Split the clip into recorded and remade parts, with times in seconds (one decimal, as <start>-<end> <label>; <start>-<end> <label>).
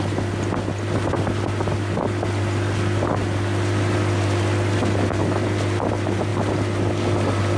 0.0-7.6 recorded